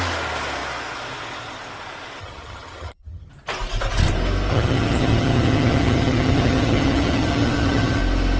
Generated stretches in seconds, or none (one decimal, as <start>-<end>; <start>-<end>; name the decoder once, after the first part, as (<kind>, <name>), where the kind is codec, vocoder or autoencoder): 2.2-3.3 (vocoder, HiFi-GAN); 4.5-8.0